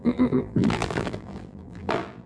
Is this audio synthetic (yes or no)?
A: yes